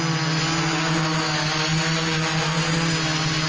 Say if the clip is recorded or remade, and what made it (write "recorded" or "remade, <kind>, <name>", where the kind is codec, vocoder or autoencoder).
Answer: recorded